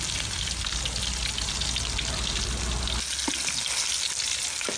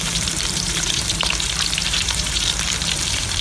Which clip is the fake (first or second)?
second